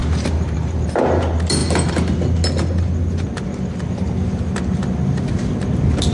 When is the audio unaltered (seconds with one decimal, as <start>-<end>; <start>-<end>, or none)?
1.2-6.1